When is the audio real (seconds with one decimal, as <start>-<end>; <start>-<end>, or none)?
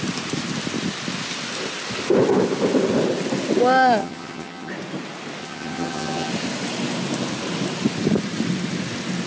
0.0-4.0; 4.7-5.4; 6.3-9.3